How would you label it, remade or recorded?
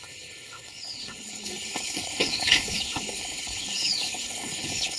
remade